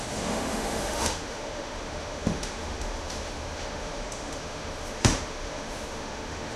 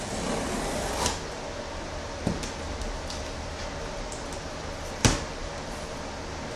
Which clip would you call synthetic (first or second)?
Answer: first